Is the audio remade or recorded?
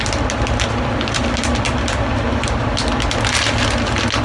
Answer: recorded